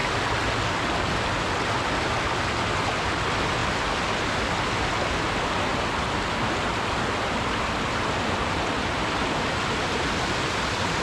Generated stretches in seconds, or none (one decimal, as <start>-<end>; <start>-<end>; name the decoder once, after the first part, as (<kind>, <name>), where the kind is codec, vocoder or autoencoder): none